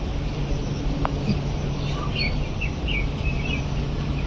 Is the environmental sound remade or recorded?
recorded